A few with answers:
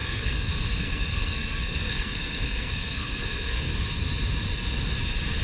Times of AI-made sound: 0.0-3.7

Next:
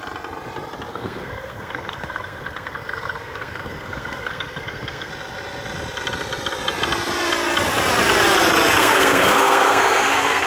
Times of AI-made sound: 0.9-5.1; 8.8-10.5

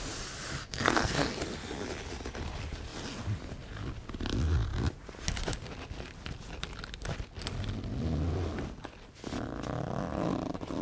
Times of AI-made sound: 0.6-1.3

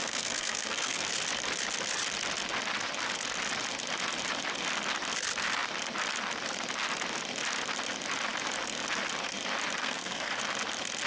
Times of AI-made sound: 0.0-1.1; 9.8-10.4